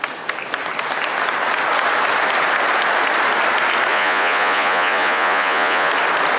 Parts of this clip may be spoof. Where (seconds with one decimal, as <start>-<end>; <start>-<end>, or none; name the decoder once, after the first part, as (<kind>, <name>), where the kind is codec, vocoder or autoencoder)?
3.9-5.9 (vocoder, Vocos)

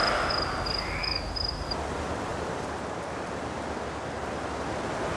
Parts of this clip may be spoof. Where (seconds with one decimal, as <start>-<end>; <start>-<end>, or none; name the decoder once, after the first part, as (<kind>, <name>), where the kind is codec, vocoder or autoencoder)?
0.0-1.0 (vocoder, BigVGAN v2); 1.7-2.3; 3.7-5.2

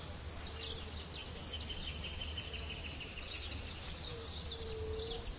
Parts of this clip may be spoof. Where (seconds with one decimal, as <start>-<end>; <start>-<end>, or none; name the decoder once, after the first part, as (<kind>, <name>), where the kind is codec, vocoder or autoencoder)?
none

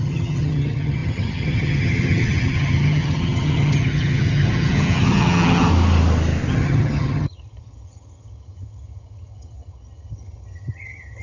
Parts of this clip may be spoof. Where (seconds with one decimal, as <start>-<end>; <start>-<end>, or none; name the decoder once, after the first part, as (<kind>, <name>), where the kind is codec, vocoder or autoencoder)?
0.0-5.7 (vocoder, HiFi-GAN); 6.5-11.2